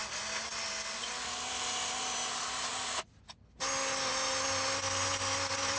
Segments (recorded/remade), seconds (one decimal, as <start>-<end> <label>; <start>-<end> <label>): 0.0-5.8 recorded